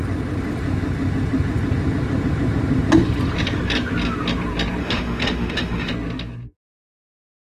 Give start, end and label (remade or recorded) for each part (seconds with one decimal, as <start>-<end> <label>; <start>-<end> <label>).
0.0-4.8 recorded; 4.8-5.9 remade; 5.9-7.5 recorded